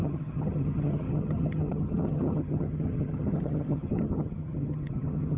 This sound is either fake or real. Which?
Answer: fake